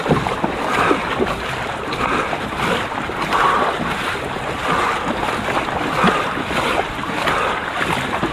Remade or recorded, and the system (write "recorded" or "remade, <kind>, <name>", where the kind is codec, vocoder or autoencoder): recorded